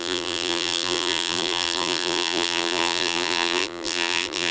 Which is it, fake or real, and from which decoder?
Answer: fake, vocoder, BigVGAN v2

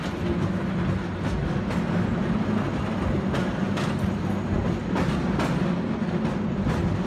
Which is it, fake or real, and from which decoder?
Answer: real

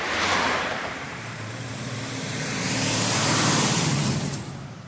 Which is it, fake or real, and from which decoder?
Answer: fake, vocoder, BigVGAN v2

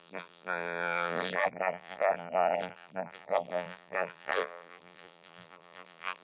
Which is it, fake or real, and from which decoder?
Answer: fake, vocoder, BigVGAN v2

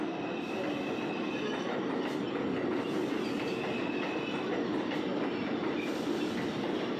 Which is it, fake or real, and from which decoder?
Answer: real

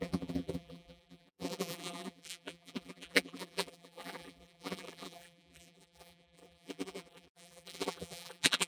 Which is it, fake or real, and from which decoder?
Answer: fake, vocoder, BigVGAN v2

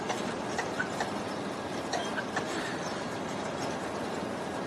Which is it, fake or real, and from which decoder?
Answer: fake, vocoder, BigVGAN v2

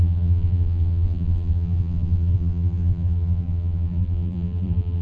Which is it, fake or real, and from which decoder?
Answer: fake, vocoder, BigVGAN v2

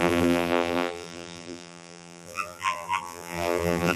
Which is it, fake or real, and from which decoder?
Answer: fake, vocoder, BigVGAN v2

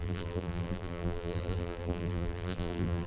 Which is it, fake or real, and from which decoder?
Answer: fake, vocoder, BigVGAN v2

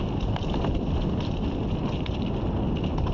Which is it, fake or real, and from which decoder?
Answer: real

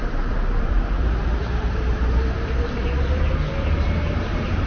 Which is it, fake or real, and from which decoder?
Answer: fake, vocoder, BigVGAN v2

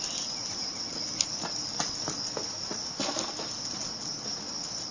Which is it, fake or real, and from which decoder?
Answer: real